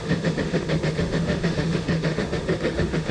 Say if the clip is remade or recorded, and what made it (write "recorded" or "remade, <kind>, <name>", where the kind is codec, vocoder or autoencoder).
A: remade, autoencoder, DAC-VAE